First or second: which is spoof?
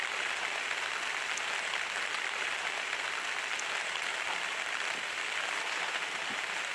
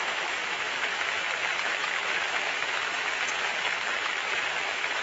second